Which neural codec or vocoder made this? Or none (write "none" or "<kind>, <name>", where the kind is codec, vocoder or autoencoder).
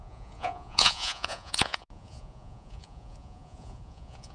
vocoder, Vocos